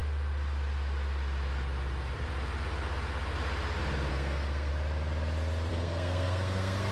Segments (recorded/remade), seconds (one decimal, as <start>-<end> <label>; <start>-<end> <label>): 0.0-4.1 recorded; 4.1-4.7 remade; 4.7-5.7 recorded; 5.7-6.9 remade